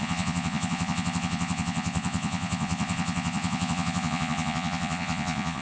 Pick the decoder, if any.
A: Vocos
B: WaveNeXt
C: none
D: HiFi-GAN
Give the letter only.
A